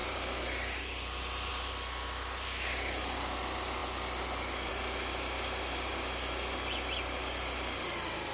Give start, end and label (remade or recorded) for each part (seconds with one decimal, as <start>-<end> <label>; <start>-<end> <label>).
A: 0.0-8.3 recorded